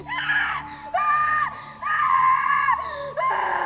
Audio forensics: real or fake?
real